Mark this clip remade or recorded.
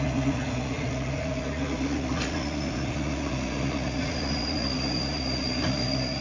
remade